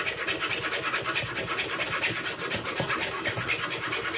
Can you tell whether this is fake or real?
real